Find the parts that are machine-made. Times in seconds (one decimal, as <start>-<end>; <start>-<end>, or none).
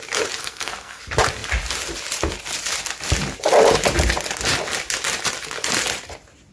0.4-1.0